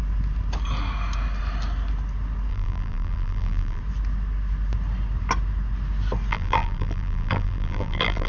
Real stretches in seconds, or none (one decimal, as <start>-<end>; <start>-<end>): 0.0-2.5; 3.8-6.3